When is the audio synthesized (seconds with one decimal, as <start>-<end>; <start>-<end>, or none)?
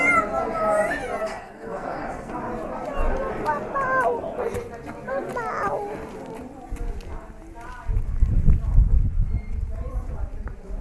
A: 1.2-2.4